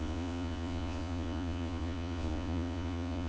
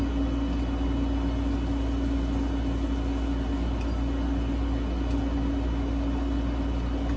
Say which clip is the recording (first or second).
second